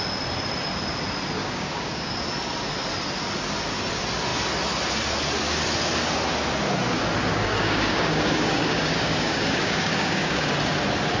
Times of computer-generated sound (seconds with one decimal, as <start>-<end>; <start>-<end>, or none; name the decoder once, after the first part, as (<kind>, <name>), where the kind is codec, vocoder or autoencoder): 1.4-2.1 (codec, DAC); 7.3-10.5